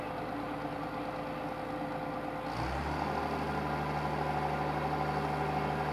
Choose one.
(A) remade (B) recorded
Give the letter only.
B